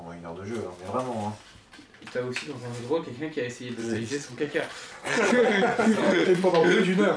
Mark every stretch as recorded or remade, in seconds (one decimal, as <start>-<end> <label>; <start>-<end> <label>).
0.0-3.8 recorded; 3.8-6.5 remade; 6.5-7.2 recorded